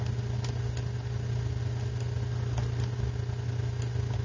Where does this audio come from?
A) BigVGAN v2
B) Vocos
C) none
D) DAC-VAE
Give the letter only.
C